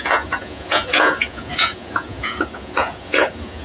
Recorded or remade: remade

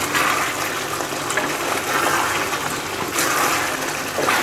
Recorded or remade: recorded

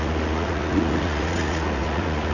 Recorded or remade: remade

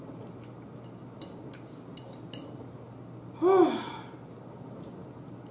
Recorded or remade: recorded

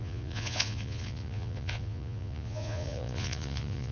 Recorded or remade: remade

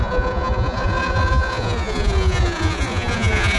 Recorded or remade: remade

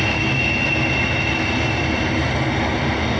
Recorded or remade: recorded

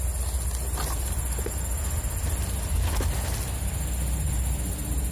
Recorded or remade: recorded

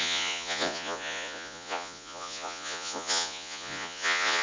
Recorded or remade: remade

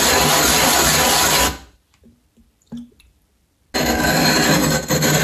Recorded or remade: recorded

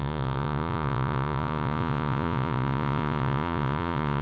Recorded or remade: remade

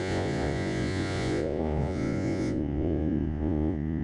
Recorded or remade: remade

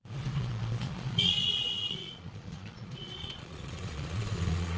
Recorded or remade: remade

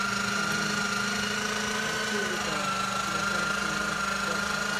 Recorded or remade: recorded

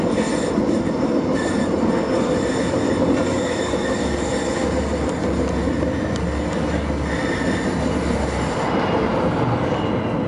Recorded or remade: recorded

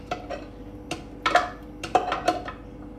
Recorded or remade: recorded